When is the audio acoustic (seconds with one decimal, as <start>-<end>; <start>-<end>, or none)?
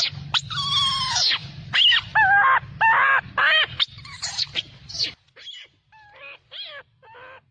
0.0-7.5